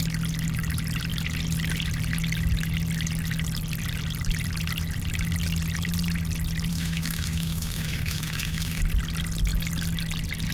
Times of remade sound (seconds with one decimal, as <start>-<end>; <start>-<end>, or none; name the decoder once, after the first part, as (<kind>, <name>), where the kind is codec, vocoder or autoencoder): 6.7-8.8 (autoencoder, DAC-VAE)